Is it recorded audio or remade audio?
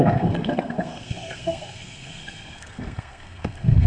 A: remade